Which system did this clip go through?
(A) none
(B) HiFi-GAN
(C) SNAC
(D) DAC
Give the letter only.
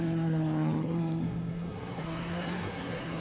C